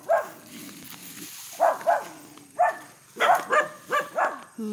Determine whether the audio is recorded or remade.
recorded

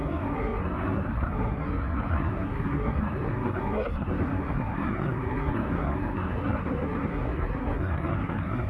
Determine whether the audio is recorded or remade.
remade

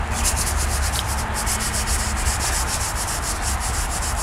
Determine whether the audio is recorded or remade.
recorded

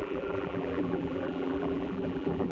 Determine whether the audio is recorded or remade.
remade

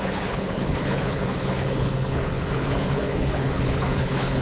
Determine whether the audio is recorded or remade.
remade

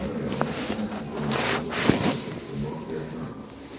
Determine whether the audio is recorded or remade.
recorded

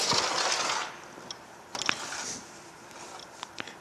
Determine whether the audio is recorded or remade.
recorded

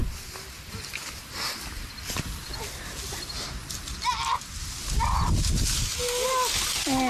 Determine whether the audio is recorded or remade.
recorded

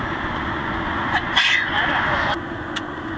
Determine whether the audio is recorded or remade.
remade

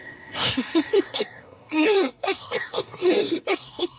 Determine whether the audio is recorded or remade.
remade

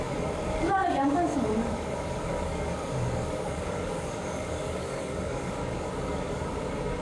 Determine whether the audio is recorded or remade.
remade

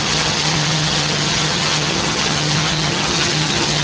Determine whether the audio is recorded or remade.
remade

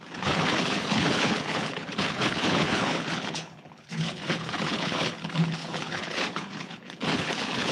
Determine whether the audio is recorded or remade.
remade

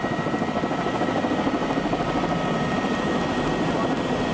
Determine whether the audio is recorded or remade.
remade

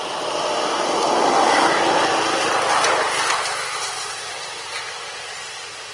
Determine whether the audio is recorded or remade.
recorded